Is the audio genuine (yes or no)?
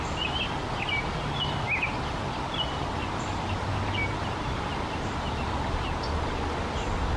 yes